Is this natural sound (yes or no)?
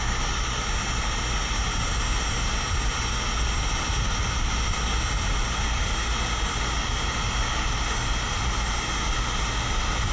yes